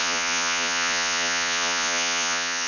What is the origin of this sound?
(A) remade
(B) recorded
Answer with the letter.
A